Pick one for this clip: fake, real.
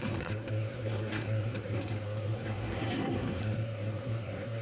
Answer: fake